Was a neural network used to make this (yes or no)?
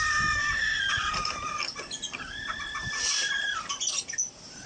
no